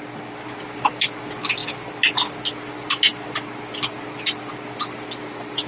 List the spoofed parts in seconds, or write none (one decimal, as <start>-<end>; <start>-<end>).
none